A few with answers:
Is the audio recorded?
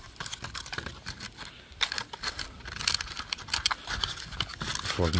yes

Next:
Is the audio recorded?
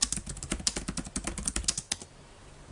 yes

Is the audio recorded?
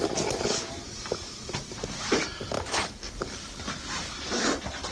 yes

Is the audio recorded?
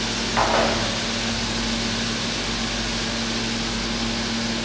yes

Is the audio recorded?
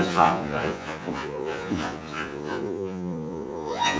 no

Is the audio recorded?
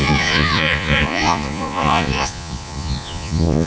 no